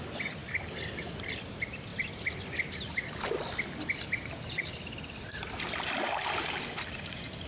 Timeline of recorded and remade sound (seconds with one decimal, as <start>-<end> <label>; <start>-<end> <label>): 0.0-7.5 remade